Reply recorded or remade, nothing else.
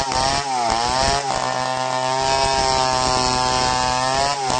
recorded